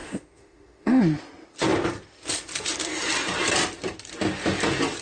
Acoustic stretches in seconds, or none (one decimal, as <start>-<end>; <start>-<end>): 1.0-5.0